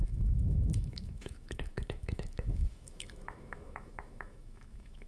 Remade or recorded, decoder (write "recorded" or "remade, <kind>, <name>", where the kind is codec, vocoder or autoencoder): remade, autoencoder, DAC-VAE